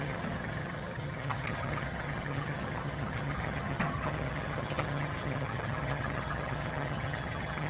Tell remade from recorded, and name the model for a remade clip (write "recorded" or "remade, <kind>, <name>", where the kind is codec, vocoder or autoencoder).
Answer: remade, vocoder, HiFi-GAN